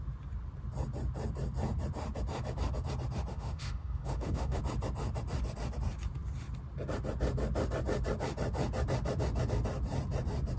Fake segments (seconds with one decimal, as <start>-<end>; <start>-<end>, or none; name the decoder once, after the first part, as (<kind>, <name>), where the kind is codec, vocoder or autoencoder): 3.3-4.6 (autoencoder, DAC-VAE)